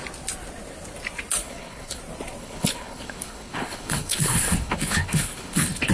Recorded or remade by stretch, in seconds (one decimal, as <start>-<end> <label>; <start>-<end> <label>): 0.0-1.4 recorded; 1.4-2.0 remade; 2.0-2.4 recorded; 2.4-5.9 remade